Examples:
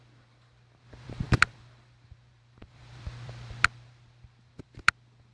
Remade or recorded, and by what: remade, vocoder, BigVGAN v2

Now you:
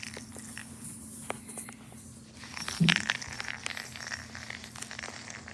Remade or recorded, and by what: recorded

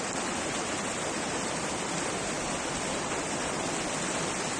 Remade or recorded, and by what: recorded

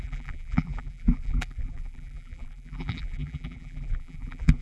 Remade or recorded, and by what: remade, vocoder, BigVGAN v2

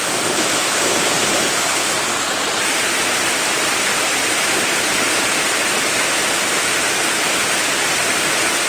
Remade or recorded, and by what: remade, vocoder, BigVGAN v2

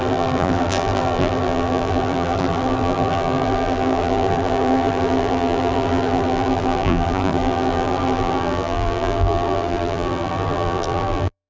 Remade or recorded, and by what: remade, vocoder, BigVGAN v2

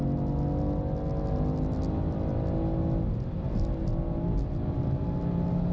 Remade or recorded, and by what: recorded